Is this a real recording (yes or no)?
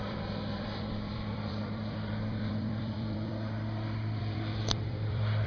no